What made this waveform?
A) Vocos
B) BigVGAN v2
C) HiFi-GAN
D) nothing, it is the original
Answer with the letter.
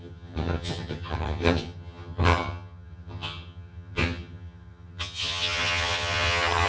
C